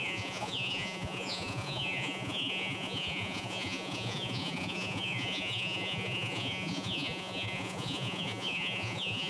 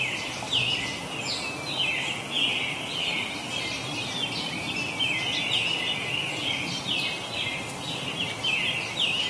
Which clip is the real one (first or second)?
second